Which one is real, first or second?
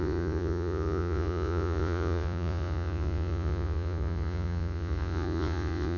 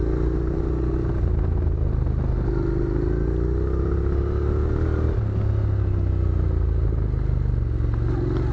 second